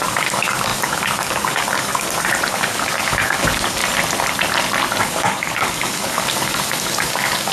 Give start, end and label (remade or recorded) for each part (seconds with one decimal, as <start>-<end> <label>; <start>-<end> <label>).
0.0-1.9 remade; 1.9-2.5 recorded; 2.5-3.8 remade; 3.8-5.0 recorded; 5.0-7.5 remade